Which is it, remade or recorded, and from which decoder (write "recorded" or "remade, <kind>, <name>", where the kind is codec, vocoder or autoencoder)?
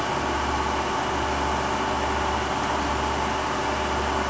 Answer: recorded